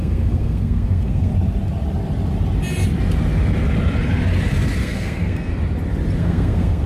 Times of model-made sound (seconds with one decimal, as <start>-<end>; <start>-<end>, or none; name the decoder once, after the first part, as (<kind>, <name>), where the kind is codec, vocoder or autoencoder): 0.0-1.3 (codec, SNAC); 4.8-5.5; 6.2-6.9